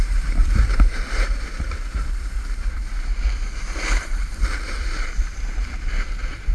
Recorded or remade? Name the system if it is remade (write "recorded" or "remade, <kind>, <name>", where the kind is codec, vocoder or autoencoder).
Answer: remade, vocoder, BigVGAN v2